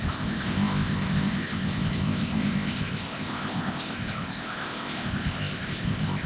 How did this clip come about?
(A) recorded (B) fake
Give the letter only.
B